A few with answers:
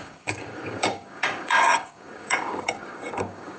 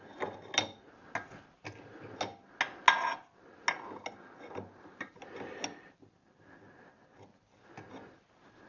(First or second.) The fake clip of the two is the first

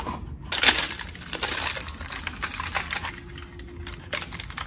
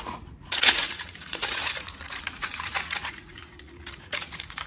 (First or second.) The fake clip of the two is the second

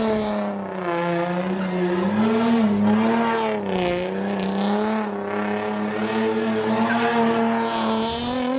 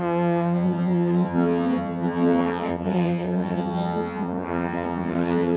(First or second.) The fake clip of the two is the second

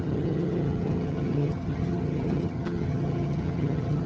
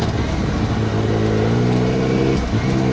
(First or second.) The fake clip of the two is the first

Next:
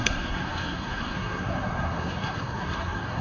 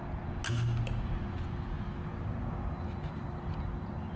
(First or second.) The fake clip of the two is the first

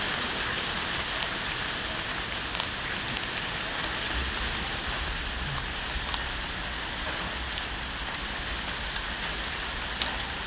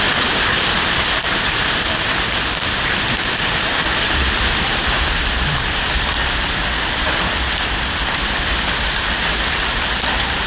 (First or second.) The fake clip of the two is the second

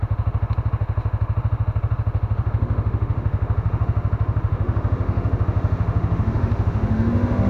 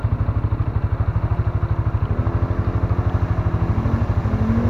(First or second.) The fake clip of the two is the first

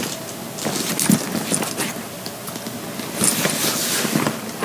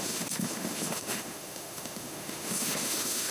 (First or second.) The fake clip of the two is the second